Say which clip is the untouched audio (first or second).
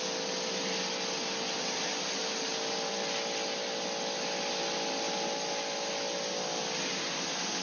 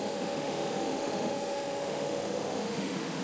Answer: first